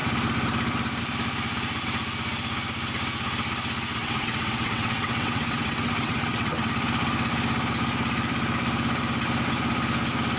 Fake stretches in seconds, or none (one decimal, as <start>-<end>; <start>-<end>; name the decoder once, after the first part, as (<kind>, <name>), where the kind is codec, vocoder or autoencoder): 4.0-6.7 (vocoder, WaveNeXt)